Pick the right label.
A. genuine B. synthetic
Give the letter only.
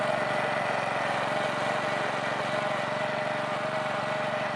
A